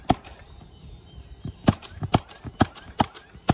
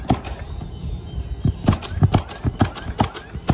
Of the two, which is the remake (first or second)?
first